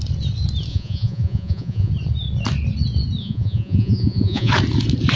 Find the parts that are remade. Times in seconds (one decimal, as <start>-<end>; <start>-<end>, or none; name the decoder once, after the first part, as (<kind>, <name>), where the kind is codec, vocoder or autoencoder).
0.7-1.9 (vocoder, Vocos); 3.2-4.5